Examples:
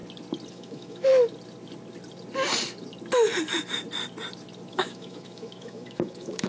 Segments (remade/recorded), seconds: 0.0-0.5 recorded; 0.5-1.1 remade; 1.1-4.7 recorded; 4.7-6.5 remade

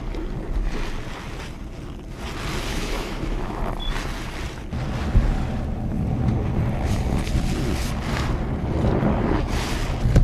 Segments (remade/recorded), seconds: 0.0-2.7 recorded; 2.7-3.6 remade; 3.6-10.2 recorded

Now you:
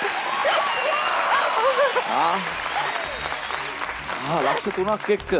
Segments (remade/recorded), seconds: 0.0-5.4 recorded